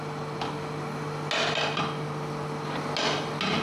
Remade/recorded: recorded